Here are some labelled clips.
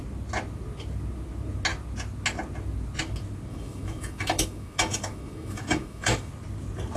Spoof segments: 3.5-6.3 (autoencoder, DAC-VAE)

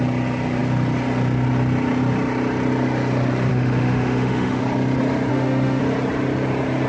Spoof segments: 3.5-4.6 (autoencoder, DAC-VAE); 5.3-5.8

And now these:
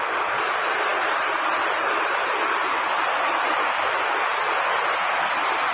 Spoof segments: none

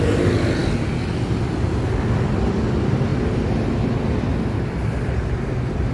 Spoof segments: none

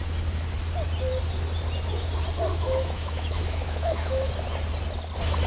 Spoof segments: 2.5-4.3 (autoencoder, DAC-VAE)